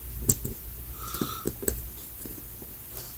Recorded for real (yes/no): yes